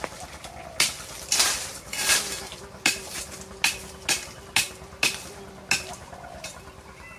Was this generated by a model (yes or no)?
no